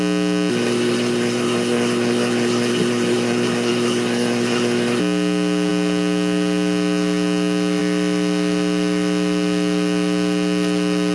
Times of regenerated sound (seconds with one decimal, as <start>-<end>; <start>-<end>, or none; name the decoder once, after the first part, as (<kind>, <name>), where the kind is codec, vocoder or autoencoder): 0.5-5.0 (codec, SNAC)